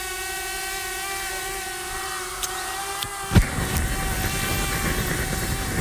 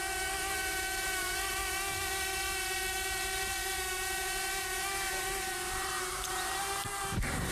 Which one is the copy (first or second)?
second